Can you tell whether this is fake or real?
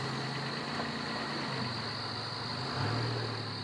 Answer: real